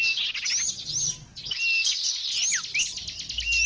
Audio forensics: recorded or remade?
recorded